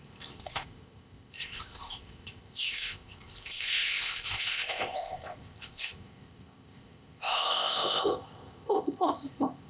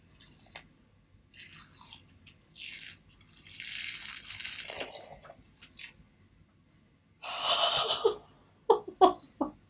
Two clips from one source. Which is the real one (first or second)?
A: second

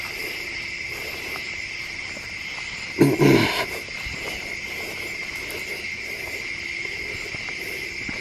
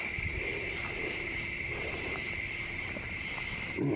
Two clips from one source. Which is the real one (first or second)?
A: first